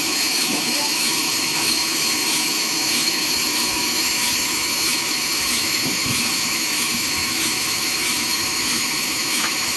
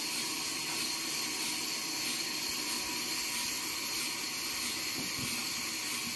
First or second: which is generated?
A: first